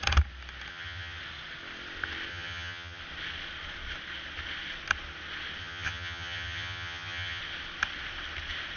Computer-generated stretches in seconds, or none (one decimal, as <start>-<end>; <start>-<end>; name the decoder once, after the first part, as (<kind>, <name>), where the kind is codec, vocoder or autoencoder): 0.7-1.2 (vocoder, HiFi-GAN); 2.3-3.0; 5.6-7.4